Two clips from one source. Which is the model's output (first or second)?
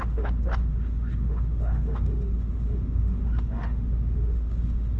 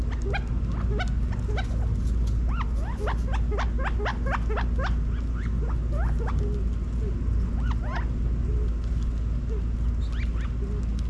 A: first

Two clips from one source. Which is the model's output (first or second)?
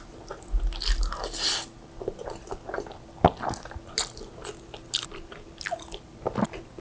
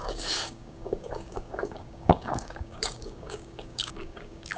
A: second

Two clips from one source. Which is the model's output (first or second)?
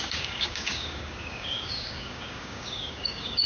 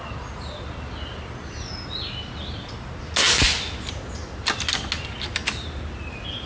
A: first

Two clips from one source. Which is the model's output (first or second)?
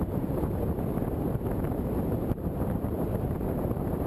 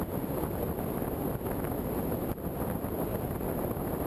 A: first